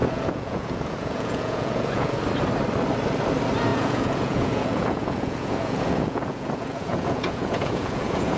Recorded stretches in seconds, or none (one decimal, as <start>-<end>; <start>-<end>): 2.2-3.7